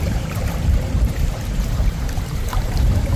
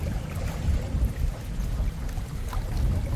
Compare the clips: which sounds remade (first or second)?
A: first